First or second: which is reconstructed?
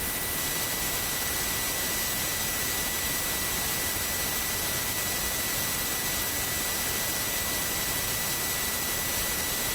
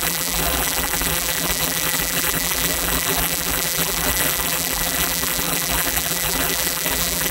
second